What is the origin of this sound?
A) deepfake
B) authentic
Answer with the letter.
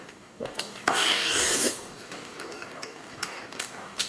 A